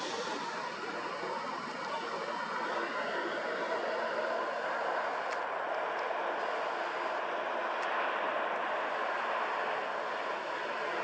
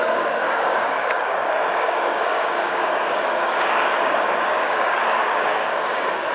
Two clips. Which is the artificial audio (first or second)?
second